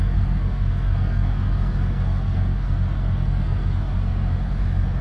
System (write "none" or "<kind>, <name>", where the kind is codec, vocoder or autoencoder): codec, SNAC